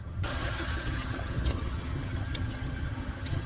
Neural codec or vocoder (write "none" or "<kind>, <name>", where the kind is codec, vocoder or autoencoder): vocoder, HiFi-GAN